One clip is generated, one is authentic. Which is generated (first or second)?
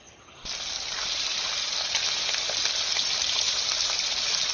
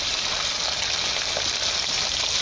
first